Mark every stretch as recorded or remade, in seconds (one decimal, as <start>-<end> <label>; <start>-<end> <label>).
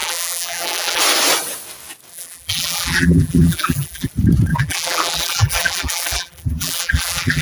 0.0-1.0 remade; 1.0-2.1 recorded; 2.1-4.1 remade; 4.1-4.5 recorded; 4.5-7.4 remade